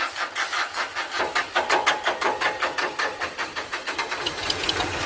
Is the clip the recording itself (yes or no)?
yes